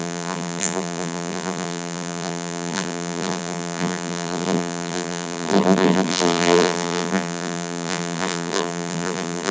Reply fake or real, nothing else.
fake